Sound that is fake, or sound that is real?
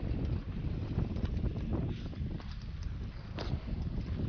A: real